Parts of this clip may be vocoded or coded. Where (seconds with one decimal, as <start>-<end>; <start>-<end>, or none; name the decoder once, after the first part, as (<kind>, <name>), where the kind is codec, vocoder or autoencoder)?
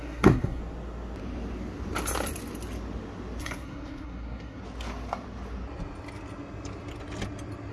0.0-0.6 (codec, SNAC); 3.4-4.6